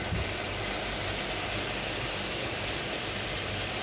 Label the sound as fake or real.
real